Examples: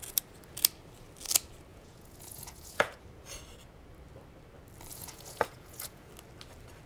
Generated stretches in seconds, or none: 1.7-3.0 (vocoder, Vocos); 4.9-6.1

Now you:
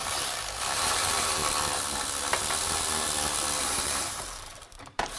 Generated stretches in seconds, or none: 0.0-1.4 (vocoder, BigVGAN v2); 3.6-5.2

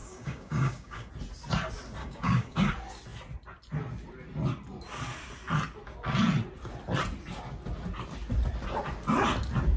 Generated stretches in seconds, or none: 0.0-1.1 (codec, DAC); 2.0-2.7

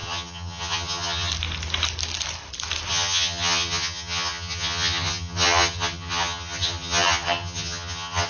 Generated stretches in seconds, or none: 0.0-1.3 (vocoder, HiFi-GAN); 2.9-8.3

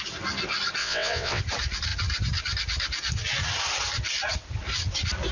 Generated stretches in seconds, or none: 0.8-1.4 (vocoder, WaveNeXt)